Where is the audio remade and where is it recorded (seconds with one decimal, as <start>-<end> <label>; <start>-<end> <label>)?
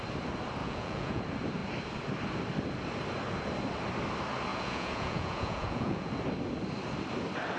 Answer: 0.0-0.6 recorded; 0.6-1.2 remade; 1.2-4.5 recorded; 4.5-6.1 remade; 6.1-7.6 recorded